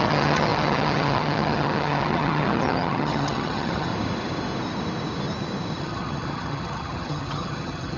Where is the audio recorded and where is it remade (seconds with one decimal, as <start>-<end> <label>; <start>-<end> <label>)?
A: 0.0-3.9 remade; 3.9-5.8 recorded; 5.8-8.0 remade